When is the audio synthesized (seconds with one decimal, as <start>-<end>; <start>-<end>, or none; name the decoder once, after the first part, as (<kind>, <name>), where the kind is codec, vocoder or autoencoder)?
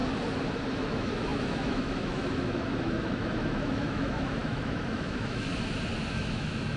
0.7-5.5 (autoencoder, DAC-VAE); 6.1-6.8